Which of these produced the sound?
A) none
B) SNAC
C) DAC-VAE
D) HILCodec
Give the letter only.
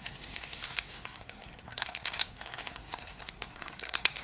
B